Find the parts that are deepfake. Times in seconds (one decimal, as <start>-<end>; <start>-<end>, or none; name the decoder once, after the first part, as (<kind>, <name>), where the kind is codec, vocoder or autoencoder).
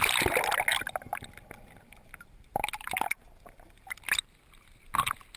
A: 2.5-3.8 (vocoder, BigVGAN v2)